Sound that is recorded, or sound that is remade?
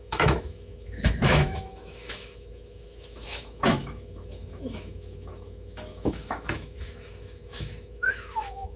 remade